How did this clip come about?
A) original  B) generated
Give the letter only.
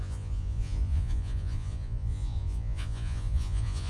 B